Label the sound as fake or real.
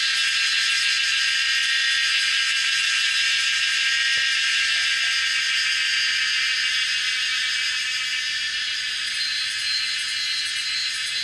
real